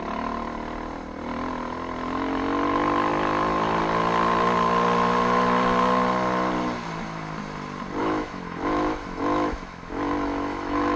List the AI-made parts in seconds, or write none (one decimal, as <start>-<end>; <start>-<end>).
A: 8.0-11.0